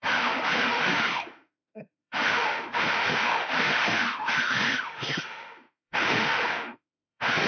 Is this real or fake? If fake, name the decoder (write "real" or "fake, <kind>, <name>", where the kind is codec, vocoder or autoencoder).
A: fake, autoencoder, DAC-VAE